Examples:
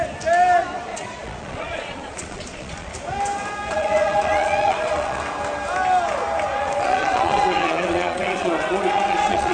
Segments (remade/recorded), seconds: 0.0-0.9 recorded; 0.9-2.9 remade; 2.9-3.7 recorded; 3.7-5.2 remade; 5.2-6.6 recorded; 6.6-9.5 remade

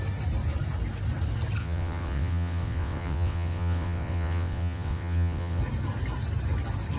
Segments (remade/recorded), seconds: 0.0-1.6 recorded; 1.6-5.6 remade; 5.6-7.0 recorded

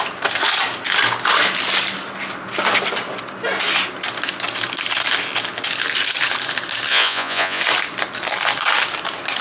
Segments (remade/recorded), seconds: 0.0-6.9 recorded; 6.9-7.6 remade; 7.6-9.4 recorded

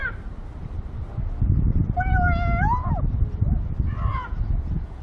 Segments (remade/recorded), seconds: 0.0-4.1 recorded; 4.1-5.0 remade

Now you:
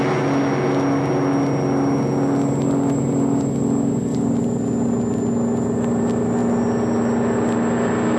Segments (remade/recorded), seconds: 0.0-8.2 recorded

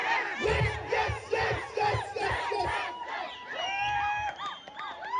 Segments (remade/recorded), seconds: 0.0-5.2 recorded

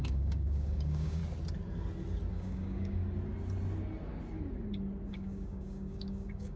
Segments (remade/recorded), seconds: 0.0-1.2 remade; 1.2-2.3 recorded; 2.3-3.0 remade; 3.0-5.1 recorded; 5.1-6.6 remade